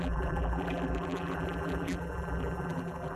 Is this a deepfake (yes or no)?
yes